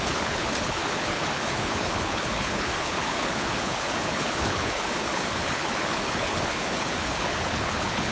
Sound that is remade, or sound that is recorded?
remade